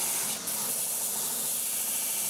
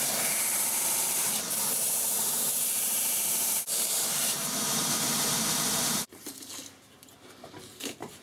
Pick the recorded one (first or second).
first